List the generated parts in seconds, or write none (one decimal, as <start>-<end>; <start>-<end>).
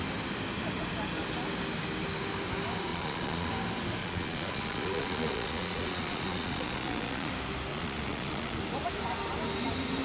2.9-3.5; 4.0-7.3; 7.7-8.6